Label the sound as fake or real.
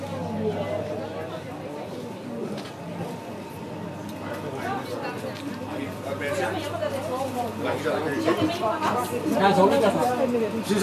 real